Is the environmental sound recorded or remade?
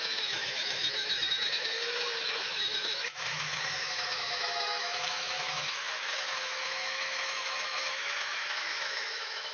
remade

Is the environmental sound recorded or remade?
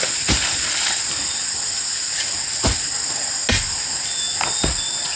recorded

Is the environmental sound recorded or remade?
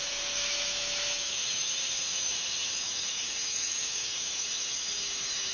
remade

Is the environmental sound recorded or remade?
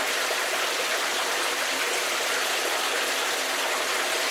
recorded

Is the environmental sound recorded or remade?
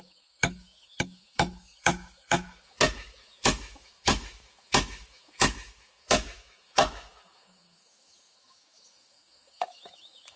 remade